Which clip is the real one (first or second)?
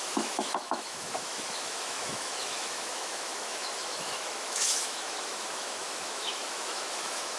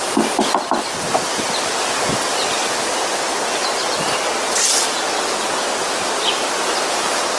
second